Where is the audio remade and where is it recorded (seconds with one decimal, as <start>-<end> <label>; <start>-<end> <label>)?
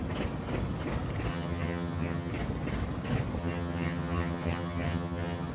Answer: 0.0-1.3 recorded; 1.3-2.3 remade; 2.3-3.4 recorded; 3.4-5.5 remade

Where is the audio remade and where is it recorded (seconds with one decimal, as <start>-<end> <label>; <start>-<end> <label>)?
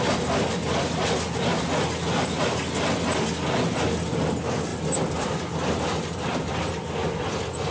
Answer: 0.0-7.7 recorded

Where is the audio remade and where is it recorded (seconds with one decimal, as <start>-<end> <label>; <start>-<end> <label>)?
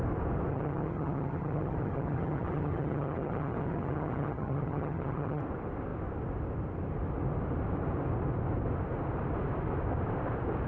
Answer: 0.0-0.5 recorded; 0.5-5.4 remade; 5.4-10.7 recorded